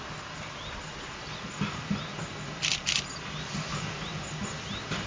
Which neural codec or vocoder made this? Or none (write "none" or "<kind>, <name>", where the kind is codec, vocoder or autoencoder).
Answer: none